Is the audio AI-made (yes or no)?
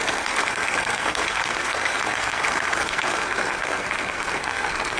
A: yes